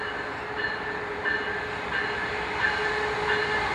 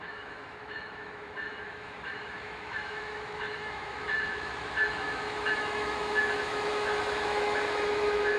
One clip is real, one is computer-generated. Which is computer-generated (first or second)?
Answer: second